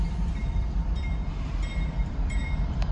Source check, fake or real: fake